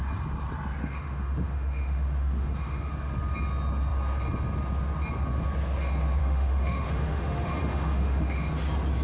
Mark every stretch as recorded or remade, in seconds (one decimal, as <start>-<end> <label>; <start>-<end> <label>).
0.0-0.8 recorded; 0.8-2.9 remade; 2.9-6.2 recorded; 6.2-8.5 remade; 8.5-9.0 recorded